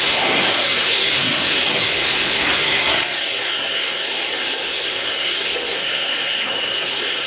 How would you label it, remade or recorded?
remade